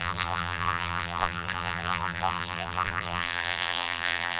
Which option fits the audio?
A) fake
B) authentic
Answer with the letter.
A